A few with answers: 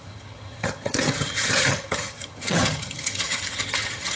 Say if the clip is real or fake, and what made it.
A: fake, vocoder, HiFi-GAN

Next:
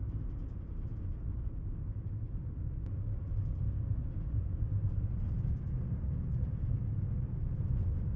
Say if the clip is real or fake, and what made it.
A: real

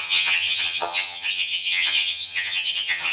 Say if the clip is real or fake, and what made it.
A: fake, vocoder, HiFi-GAN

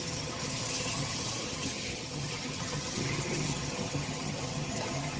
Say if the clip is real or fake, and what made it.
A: fake, vocoder, HiFi-GAN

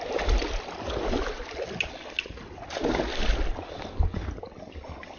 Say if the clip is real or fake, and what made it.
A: real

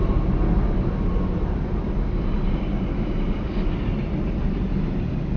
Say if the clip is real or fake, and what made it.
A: real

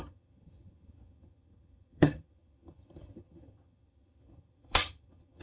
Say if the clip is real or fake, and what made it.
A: fake, vocoder, HiFi-GAN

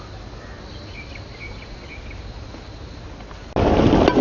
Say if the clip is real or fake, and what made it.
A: real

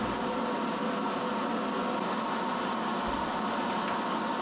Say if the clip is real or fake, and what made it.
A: real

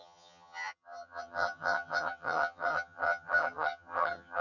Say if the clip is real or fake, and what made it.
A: fake, vocoder, HiFi-GAN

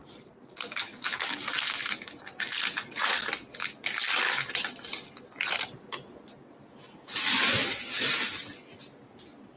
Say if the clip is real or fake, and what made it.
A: real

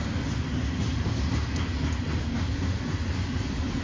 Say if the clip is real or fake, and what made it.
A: real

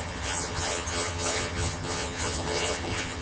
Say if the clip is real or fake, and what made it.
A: fake, vocoder, HiFi-GAN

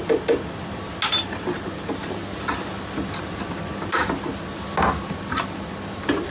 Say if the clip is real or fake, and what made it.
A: real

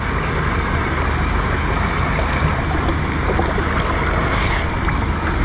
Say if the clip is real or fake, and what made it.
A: real